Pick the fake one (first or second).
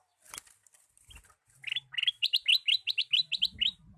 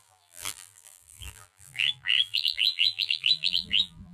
second